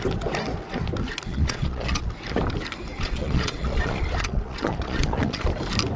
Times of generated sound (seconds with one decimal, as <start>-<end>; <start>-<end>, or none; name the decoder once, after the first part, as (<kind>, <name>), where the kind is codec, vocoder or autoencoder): 1.3-2.1 (vocoder, Vocos); 2.9-5.4

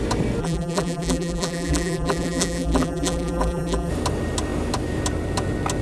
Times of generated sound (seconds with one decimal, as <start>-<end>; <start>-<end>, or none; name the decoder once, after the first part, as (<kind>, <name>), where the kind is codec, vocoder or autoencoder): 0.4-3.9 (vocoder, BigVGAN v2)